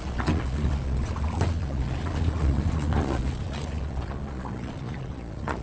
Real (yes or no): no